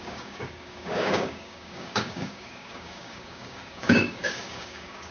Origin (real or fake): fake